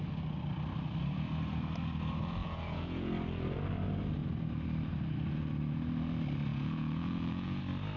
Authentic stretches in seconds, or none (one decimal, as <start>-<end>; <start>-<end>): 0.0-2.4; 3.1-6.5; 7.6-8.0